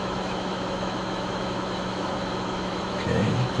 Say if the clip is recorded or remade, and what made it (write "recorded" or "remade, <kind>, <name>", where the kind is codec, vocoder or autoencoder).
remade, autoencoder, DAC-VAE